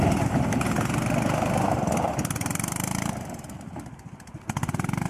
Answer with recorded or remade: recorded